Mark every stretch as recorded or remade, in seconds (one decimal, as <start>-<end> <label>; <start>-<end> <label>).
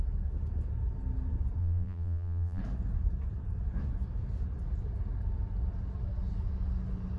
0.0-1.6 recorded; 1.6-2.6 remade; 2.6-7.2 recorded